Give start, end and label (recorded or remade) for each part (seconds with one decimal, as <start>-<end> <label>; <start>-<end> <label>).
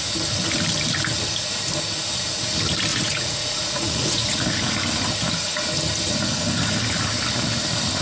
0.0-2.9 recorded; 2.9-4.4 remade; 4.4-8.0 recorded